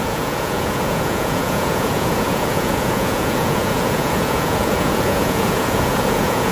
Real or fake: fake